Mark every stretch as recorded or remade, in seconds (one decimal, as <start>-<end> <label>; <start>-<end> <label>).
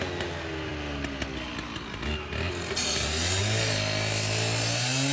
0.0-5.1 recorded